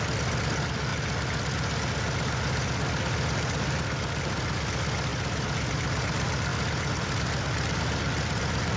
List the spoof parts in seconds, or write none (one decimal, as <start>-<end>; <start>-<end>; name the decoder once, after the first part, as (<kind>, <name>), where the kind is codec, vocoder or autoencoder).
none